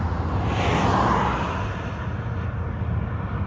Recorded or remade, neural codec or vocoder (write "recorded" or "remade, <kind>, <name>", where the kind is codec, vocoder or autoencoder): recorded